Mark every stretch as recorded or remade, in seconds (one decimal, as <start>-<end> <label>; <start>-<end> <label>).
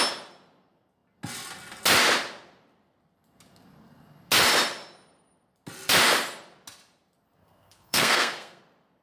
0.0-7.4 recorded; 7.4-8.6 remade; 8.6-9.0 recorded